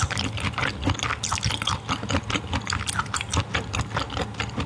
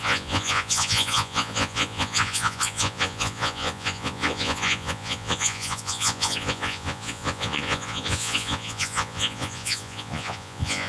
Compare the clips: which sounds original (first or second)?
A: first